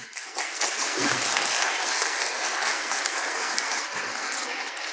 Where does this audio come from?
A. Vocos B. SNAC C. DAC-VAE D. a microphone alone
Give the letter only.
B